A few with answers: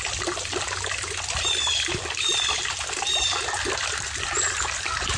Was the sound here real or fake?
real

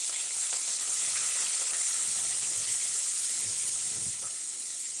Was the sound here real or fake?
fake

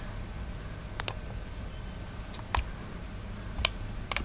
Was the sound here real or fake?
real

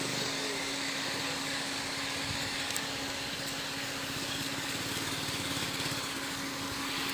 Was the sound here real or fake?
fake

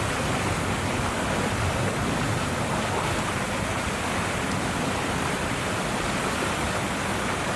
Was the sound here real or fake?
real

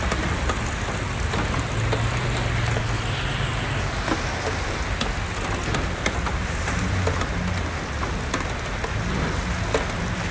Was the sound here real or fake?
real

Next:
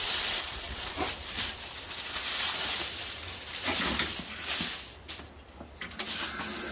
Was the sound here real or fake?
real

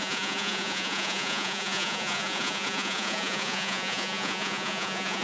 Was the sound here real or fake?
fake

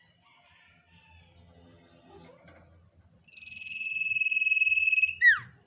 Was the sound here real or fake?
real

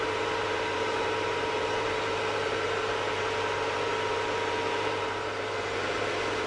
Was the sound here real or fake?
fake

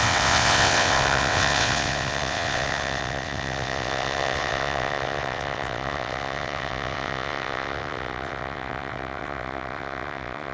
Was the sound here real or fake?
fake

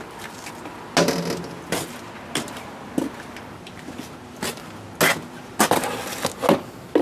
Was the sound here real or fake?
real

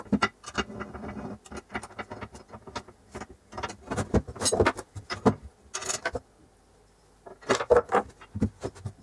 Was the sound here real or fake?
real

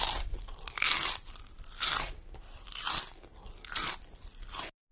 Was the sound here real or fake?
real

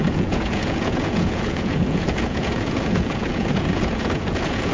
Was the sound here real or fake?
fake